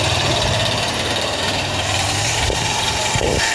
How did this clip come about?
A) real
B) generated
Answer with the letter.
B